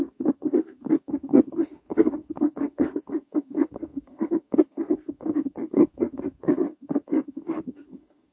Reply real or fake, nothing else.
fake